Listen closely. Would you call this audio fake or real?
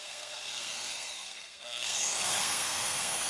fake